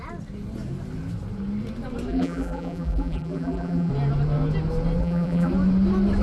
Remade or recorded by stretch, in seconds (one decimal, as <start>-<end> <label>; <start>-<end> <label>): 0.0-2.1 recorded; 2.1-3.9 remade; 3.9-5.0 recorded; 5.0-5.5 remade; 5.5-6.2 recorded